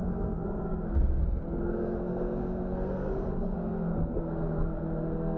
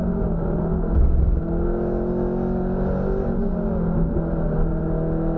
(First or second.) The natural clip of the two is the second